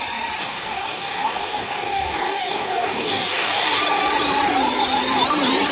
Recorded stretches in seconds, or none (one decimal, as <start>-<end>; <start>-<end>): 0.0-0.4; 3.8-5.7